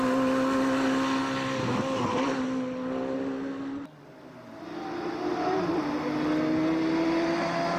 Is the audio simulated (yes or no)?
no